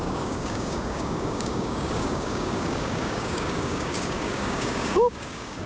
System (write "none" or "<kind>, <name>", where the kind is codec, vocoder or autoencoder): codec, DAC